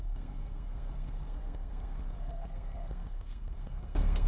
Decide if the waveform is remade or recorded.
remade